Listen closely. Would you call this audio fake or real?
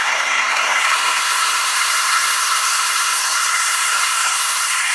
fake